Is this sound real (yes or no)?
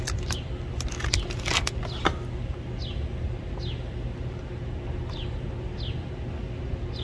yes